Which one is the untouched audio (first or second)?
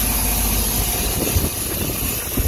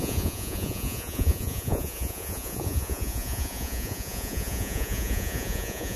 first